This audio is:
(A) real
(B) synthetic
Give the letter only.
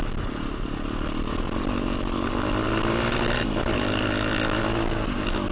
A